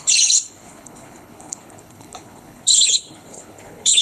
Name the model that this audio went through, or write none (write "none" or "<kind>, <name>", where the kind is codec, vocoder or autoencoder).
codec, HILCodec